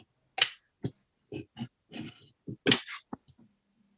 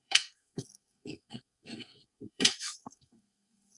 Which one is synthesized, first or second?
second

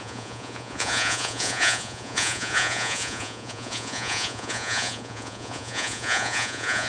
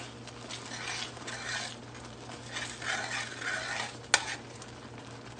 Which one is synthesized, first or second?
first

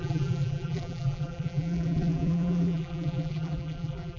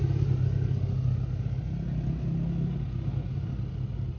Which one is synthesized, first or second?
first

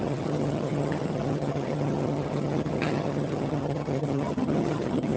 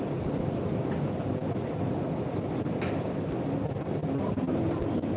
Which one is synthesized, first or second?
first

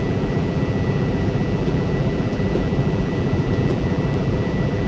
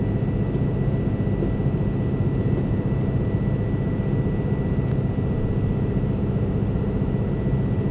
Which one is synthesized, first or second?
first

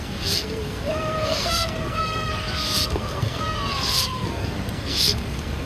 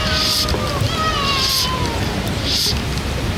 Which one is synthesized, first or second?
first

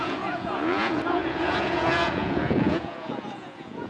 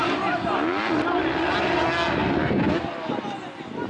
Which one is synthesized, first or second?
first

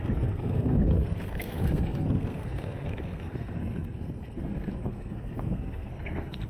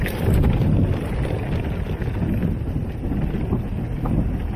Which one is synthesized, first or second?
first